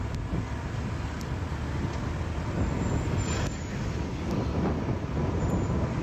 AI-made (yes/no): no